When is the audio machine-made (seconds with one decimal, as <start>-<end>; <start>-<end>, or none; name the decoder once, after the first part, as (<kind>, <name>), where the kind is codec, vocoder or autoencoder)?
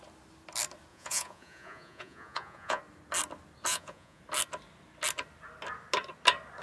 0.9-2.8 (vocoder, Vocos); 3.7-4.2